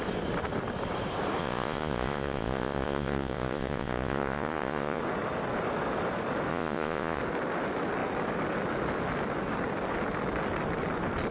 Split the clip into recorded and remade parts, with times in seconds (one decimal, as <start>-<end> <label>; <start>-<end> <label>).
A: 0.0-1.4 recorded; 1.4-5.0 remade; 5.0-6.5 recorded; 6.5-7.2 remade; 7.2-11.3 recorded